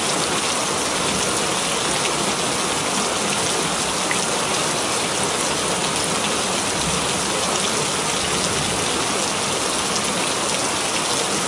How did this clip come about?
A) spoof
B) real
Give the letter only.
B